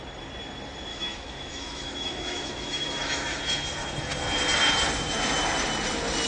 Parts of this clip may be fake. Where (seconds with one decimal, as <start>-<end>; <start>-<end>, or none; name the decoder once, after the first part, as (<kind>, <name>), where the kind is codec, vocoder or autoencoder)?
0.9-3.4 (autoencoder, DAC-VAE)